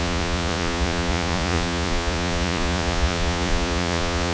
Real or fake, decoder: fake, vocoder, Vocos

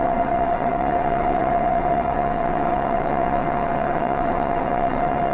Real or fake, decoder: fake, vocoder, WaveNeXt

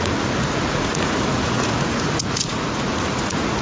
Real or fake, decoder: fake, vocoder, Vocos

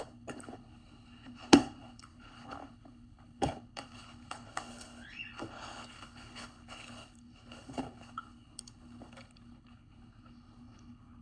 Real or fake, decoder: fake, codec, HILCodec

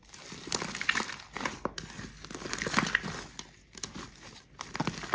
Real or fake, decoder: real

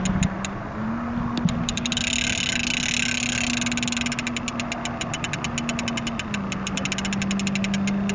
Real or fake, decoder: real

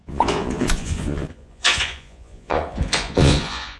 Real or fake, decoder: fake, vocoder, Vocos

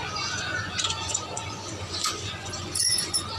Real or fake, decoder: fake, vocoder, Vocos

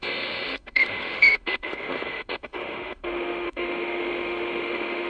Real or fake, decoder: fake, autoencoder, DAC-VAE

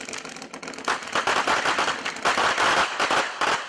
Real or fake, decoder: real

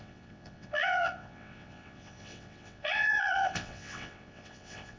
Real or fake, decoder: fake, vocoder, WaveNeXt